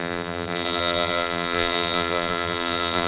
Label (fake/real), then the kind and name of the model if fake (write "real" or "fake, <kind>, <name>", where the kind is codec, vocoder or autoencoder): fake, vocoder, BigVGAN v2